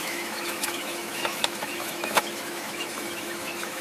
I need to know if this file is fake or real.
fake